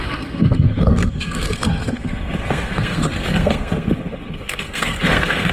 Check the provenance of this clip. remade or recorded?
remade